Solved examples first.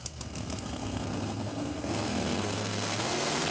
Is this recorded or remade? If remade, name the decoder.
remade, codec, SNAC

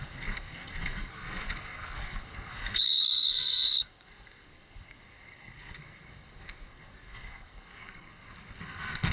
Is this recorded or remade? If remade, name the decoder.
remade, codec, SNAC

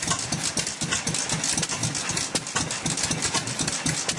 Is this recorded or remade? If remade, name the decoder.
recorded